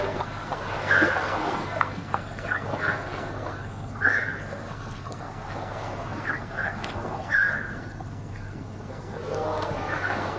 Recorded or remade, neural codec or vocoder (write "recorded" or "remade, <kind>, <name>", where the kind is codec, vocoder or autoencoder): remade, codec, SNAC